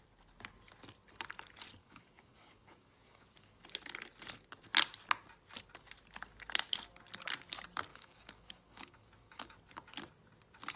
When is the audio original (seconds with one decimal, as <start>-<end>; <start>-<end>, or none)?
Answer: 0.0-1.8; 3.6-7.9; 9.6-10.8